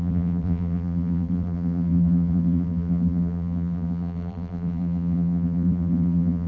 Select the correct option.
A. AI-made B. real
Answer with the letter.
A